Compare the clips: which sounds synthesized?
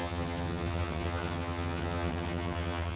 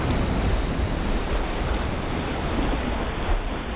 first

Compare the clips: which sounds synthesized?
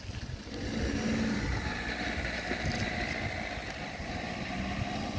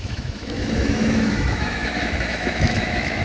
second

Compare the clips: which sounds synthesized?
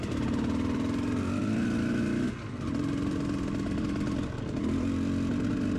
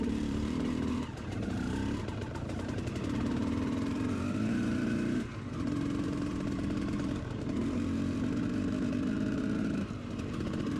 second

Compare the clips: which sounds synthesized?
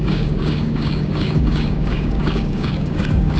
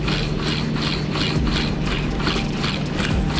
first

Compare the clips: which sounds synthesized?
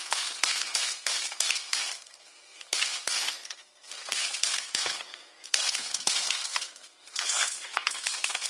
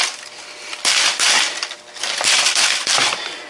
first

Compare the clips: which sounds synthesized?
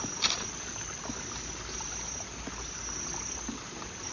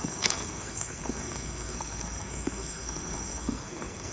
second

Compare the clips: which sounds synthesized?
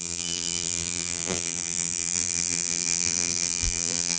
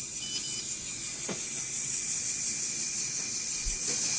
first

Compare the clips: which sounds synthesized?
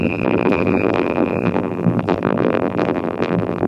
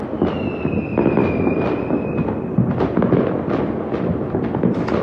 first